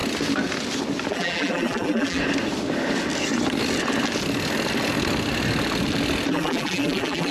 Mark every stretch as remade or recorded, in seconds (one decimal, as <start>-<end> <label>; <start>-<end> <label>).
0.0-1.1 recorded; 1.1-2.2 remade; 2.2-6.3 recorded; 6.3-7.3 remade